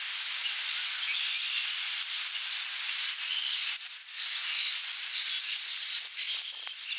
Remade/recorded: recorded